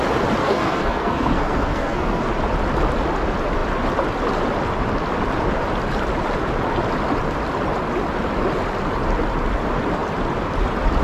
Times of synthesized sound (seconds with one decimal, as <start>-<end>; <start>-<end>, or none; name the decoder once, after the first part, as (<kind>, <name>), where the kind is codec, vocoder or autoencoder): 0.4-2.3 (codec, SNAC)